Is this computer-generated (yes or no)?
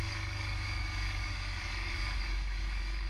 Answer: yes